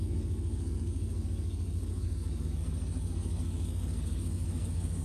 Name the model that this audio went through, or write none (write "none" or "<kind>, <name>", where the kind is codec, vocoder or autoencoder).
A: codec, SNAC